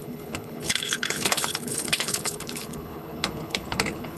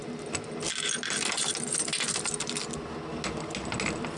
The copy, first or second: first